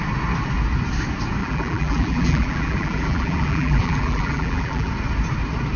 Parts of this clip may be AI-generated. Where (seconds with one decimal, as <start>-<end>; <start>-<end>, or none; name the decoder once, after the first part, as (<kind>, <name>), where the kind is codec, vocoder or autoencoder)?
1.4-4.9 (vocoder, BigVGAN v2)